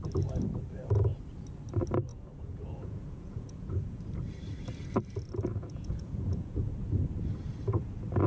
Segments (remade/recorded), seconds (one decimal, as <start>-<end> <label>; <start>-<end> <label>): 0.0-2.1 recorded; 2.1-4.0 remade; 4.0-5.5 recorded; 5.5-6.6 remade; 6.6-8.3 recorded